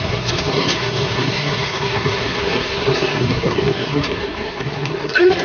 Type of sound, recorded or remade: remade